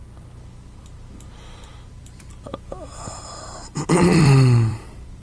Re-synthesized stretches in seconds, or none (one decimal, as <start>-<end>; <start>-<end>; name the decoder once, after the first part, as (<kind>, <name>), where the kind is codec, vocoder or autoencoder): 2.0-5.2 (vocoder, BigVGAN v2)